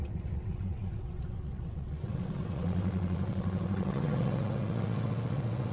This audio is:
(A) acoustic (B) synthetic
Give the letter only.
B